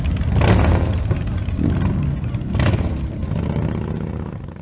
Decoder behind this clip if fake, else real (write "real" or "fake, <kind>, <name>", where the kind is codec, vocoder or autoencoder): real